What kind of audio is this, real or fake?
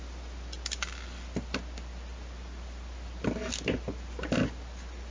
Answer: real